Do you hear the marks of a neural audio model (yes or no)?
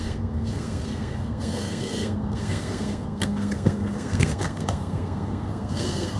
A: yes